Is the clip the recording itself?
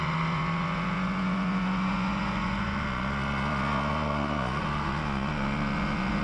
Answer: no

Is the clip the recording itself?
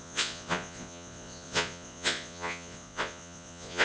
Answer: no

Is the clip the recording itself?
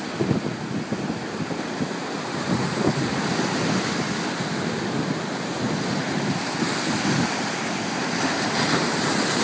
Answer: yes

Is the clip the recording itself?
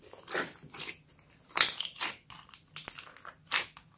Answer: yes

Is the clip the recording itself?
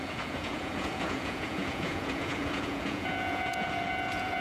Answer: no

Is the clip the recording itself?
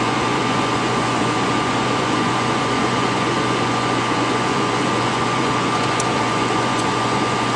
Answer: no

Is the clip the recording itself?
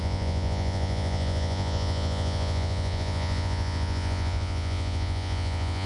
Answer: no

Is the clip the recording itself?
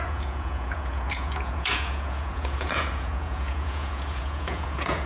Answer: no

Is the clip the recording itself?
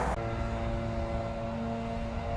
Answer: yes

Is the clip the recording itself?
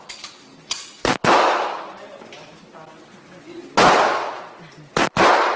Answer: yes